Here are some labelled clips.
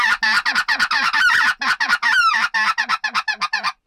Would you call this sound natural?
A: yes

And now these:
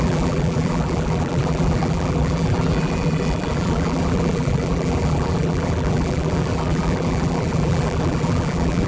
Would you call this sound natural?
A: no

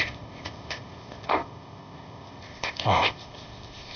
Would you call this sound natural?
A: no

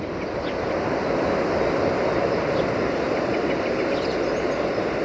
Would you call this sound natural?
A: yes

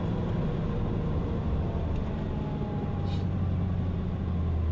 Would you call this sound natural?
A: yes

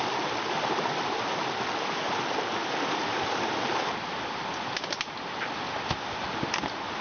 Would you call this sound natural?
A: yes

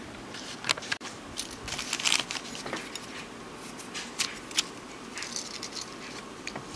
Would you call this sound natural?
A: yes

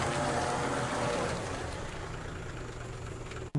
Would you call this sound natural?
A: yes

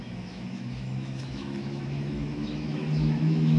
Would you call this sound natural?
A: no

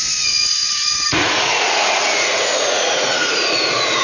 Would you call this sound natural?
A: no